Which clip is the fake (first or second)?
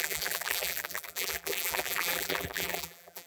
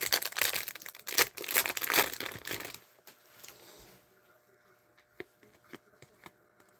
first